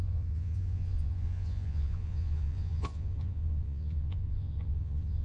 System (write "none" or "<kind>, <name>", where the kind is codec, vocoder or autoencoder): vocoder, Vocos